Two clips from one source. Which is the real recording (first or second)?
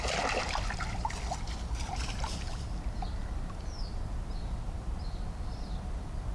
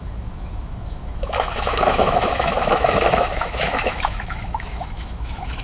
first